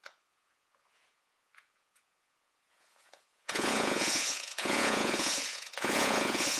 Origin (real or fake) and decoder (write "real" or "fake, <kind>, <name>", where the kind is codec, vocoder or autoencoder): fake, vocoder, Vocos